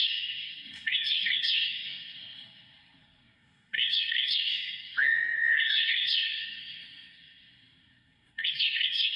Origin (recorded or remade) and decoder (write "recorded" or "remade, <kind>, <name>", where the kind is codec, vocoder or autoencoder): remade, codec, SNAC